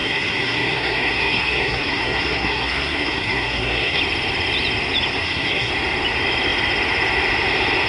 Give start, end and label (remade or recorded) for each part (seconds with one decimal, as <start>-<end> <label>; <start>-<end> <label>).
0.0-4.0 remade; 4.0-5.2 recorded; 5.2-5.7 remade; 5.7-7.9 recorded